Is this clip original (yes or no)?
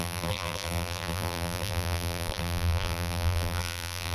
no